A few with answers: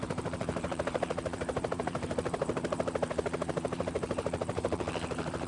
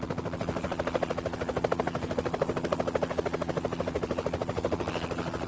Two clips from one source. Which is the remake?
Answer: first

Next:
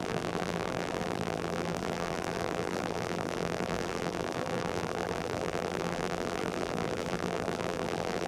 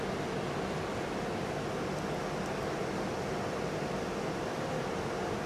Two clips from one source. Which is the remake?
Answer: first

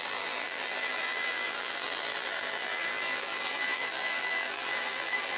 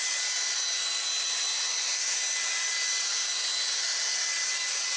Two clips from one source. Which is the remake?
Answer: first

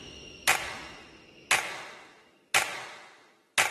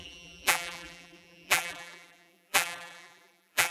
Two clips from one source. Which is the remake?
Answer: second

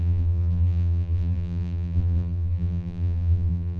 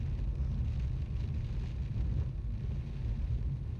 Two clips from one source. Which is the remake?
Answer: first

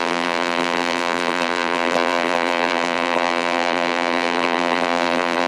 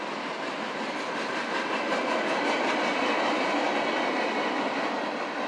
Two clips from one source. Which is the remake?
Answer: first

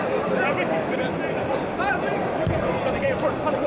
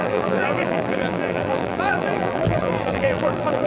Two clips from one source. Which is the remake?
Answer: second